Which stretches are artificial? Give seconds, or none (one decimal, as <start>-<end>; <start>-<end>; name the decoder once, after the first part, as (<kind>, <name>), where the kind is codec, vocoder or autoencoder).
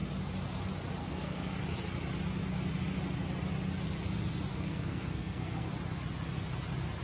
1.0-1.6 (codec, SNAC); 4.5-5.7